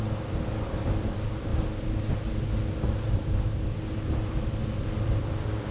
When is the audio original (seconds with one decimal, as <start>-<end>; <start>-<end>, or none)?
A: 1.5-4.8